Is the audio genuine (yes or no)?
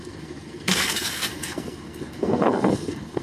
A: no